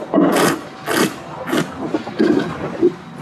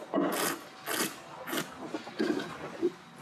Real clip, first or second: second